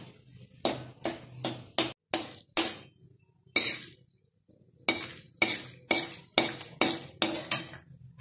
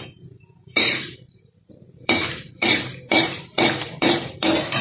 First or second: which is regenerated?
second